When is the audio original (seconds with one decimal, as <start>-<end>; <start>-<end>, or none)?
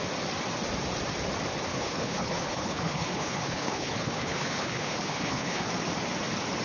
0.0-1.7; 5.7-6.6